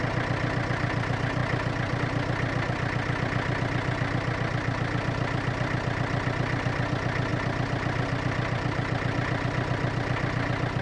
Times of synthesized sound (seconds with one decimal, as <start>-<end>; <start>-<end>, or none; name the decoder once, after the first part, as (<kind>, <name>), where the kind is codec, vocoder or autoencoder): none